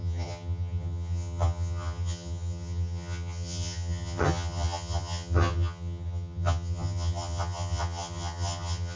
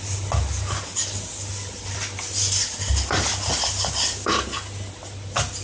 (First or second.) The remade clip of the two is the first